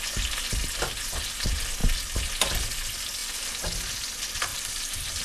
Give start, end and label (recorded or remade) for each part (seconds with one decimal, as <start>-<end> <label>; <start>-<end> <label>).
0.0-4.5 recorded; 4.5-5.2 remade